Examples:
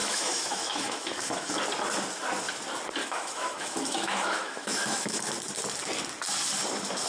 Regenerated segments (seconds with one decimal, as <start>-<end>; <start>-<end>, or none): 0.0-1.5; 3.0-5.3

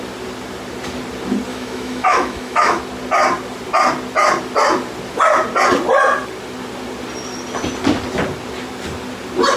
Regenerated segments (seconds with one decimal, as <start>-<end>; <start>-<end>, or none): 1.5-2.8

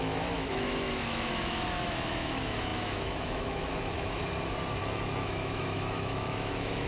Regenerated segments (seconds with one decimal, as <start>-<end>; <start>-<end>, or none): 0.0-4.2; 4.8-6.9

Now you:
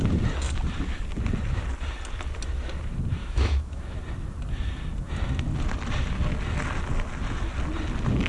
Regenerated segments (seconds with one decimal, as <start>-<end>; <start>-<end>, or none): 3.2-3.8

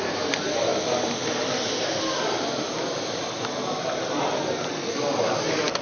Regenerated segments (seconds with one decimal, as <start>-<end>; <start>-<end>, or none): none

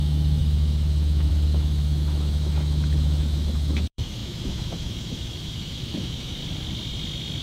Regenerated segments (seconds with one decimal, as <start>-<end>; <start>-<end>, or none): 0.0-6.4

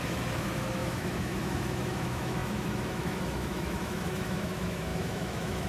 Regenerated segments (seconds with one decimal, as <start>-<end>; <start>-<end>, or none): 0.0-5.7

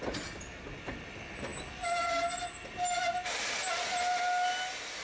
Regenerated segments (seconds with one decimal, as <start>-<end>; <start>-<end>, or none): none